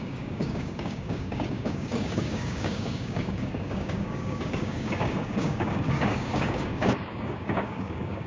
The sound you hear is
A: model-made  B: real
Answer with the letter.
A